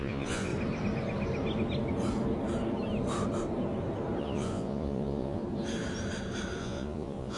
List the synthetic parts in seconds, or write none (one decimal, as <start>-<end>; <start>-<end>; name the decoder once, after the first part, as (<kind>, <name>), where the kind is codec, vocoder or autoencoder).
0.0-0.5 (vocoder, Vocos); 4.2-5.4; 6.6-7.4